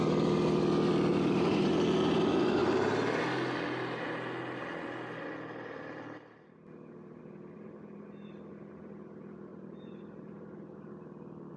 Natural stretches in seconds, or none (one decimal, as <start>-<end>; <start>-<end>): 0.0-1.1; 1.7-9.5; 10.9-11.6